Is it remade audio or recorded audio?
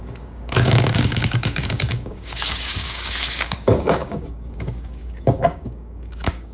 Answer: remade